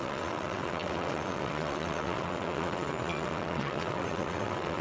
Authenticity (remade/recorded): remade